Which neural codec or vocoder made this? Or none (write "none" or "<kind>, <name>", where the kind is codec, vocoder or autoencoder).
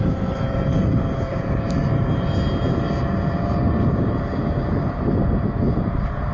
vocoder, BigVGAN v2